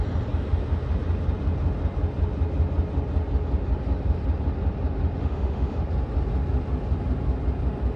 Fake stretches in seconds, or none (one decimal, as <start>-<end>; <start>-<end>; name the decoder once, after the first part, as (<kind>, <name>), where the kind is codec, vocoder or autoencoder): 5.2-5.8 (autoencoder, DAC-VAE)

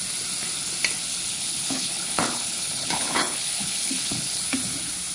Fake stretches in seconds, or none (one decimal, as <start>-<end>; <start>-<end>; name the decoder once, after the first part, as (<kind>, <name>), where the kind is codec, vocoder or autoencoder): 1.3-4.4 (codec, HILCodec)

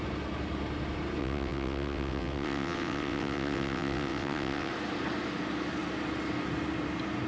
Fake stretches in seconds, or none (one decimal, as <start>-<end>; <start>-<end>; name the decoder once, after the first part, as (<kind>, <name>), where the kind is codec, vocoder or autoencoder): 1.2-4.7 (vocoder, WaveNeXt)